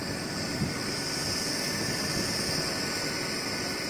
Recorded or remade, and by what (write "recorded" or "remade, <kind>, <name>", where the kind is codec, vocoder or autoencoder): recorded